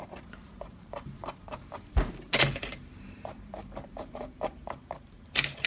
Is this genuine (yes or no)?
no